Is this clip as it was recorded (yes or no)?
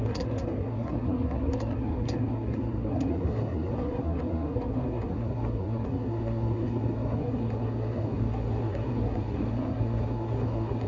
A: no